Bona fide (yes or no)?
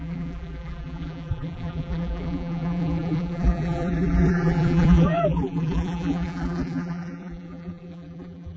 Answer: no